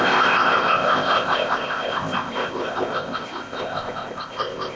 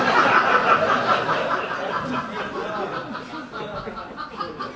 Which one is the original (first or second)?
second